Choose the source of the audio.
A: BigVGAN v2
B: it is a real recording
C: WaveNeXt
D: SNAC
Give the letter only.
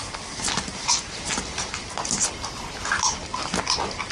B